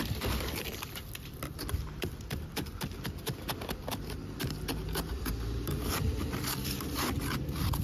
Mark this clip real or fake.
fake